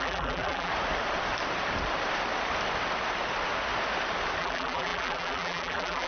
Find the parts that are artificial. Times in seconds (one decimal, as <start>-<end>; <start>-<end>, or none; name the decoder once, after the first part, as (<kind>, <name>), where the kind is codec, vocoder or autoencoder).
0.0-0.7 (vocoder, BigVGAN v2); 4.4-6.1